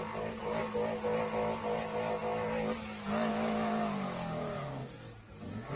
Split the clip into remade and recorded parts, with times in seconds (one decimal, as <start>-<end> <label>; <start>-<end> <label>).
0.0-3.3 recorded; 3.3-4.9 remade; 4.9-5.8 recorded